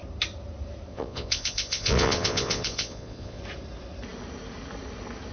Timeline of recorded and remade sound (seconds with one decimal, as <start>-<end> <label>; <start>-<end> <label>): 0.0-0.9 recorded; 0.9-3.4 remade; 3.4-5.3 recorded

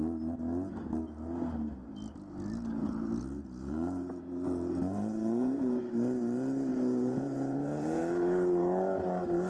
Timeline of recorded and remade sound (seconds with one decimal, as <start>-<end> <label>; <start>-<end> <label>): 0.0-2.8 recorded; 2.8-5.8 remade; 5.8-6.7 recorded; 6.7-8.0 remade; 8.0-9.5 recorded

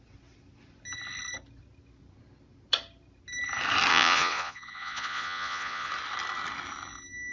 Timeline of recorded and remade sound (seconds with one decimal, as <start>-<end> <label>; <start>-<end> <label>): 0.0-3.9 recorded; 3.9-5.9 remade; 5.9-7.3 recorded

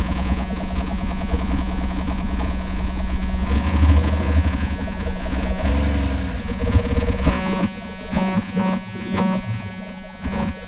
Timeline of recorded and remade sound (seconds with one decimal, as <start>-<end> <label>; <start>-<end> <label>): 0.0-5.7 remade; 5.7-6.4 recorded; 6.4-10.7 remade

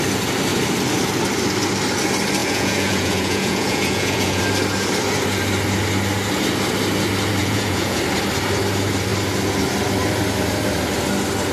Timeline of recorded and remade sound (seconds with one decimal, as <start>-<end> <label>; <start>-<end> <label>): 0.0-2.4 recorded; 2.4-4.4 remade; 4.4-7.4 recorded; 7.4-8.0 remade; 8.0-11.5 recorded

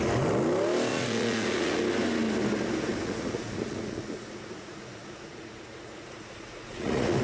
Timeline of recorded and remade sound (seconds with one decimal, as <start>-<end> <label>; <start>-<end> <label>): 0.0-0.9 recorded; 0.9-1.8 remade; 1.8-2.9 recorded; 2.9-7.2 remade